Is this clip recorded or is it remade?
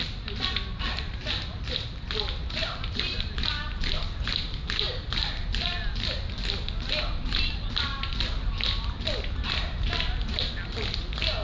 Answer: recorded